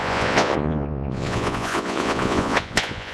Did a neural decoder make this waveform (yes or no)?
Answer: yes